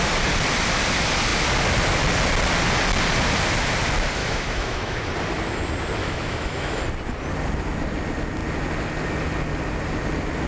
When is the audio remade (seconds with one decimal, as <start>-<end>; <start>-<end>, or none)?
4.2-5.1; 6.0-6.8